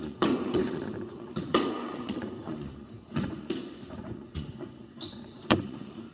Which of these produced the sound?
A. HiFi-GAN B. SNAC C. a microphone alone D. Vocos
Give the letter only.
D